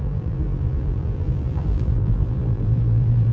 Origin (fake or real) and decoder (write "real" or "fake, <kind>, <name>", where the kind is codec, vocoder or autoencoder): fake, vocoder, BigVGAN v2